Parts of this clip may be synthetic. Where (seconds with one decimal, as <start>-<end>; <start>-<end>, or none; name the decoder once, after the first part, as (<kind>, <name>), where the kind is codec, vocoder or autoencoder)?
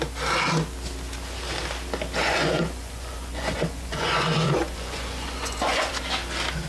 2.2-5.9 (vocoder, Vocos)